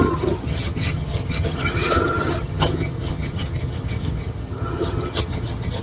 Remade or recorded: remade